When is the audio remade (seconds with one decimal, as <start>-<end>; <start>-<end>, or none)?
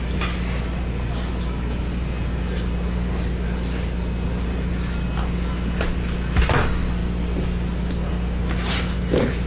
none